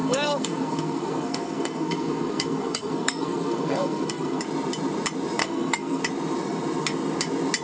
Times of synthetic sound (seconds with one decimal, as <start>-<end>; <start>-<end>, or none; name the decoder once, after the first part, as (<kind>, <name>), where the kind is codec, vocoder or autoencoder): 0.0-4.4 (codec, SNAC); 5.4-6.0